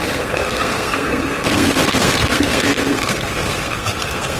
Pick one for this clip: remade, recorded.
remade